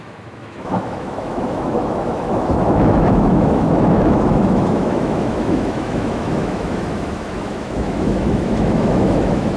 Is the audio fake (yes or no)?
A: yes